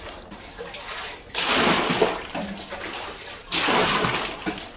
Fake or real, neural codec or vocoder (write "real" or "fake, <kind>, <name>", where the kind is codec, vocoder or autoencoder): real